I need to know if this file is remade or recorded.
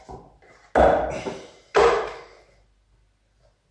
recorded